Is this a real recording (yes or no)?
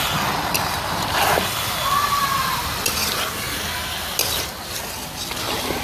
yes